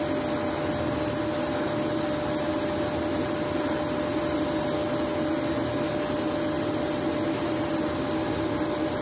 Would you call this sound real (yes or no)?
yes